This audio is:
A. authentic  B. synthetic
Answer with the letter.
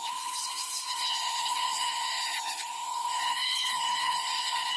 B